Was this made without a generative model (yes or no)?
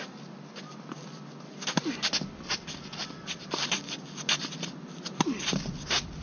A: yes